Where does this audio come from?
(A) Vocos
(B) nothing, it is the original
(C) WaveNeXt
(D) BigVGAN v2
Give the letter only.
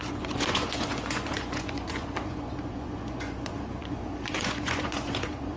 A